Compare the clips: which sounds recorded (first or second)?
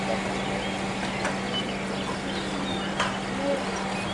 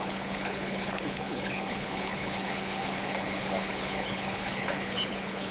first